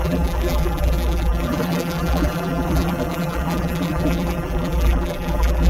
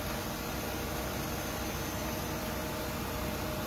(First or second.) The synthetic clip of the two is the first